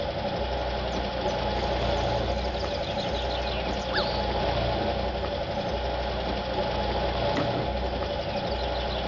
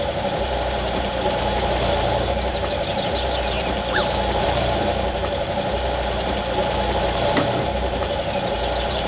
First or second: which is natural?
first